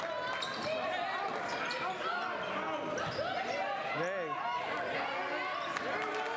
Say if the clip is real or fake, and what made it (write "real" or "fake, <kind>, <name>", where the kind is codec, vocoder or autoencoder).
real